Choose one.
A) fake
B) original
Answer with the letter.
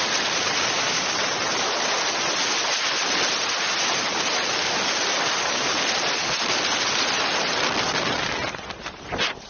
B